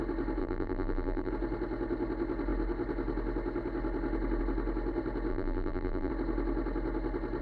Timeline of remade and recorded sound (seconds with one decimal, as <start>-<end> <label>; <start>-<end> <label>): 0.0-0.4 recorded; 0.4-1.3 remade; 1.3-5.3 recorded; 5.3-6.1 remade; 6.1-7.4 recorded